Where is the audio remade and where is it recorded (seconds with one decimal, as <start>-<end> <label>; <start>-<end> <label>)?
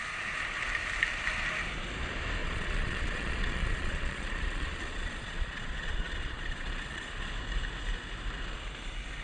0.0-2.4 recorded; 2.4-7.3 remade; 7.3-9.2 recorded